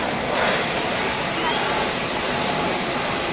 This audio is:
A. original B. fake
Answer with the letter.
A